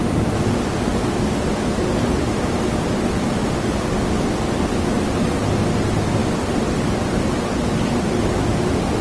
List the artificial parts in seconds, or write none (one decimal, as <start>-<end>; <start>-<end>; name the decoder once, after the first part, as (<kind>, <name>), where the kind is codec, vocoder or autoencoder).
6.2-6.9 (vocoder, BigVGAN v2)